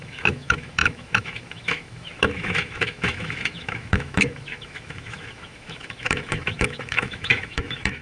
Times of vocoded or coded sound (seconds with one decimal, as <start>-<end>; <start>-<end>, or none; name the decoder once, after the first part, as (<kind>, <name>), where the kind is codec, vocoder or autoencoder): 0.0-8.0 (autoencoder, DAC-VAE)